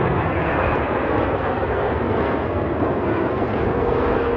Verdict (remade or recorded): remade